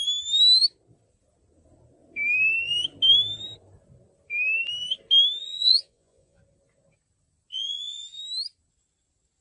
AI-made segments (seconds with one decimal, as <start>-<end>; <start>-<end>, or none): 5.4-6.4; 7.5-8.2